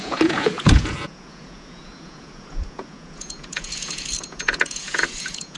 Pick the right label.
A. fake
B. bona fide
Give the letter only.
A